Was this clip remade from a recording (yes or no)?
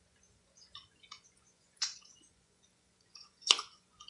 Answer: yes